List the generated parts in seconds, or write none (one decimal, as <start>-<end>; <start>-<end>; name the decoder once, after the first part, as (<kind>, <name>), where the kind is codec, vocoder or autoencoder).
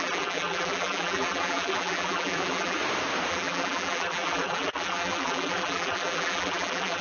0.0-2.8 (vocoder, BigVGAN v2); 3.3-7.0